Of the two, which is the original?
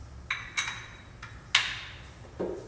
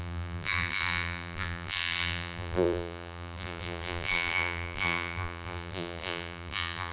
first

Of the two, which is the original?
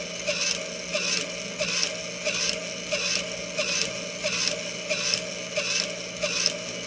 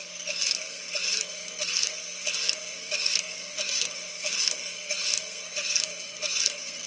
first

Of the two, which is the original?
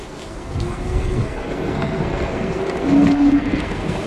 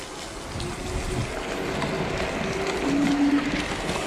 second